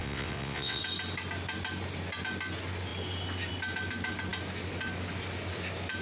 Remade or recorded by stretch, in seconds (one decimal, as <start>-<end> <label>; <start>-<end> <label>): 0.0-0.8 remade; 0.8-6.0 recorded